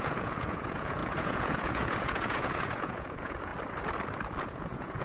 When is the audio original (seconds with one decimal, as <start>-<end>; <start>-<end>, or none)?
3.5-4.4